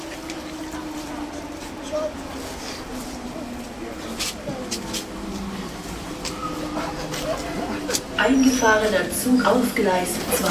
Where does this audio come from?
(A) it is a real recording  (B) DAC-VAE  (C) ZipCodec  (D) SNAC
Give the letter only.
A